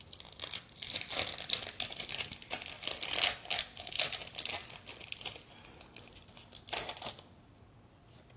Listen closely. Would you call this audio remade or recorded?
recorded